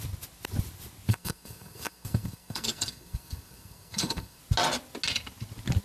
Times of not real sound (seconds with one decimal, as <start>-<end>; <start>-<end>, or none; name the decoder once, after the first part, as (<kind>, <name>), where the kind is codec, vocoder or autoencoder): 1.1-4.4 (codec, SNAC)